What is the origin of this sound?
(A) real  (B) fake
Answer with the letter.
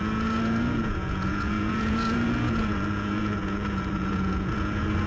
B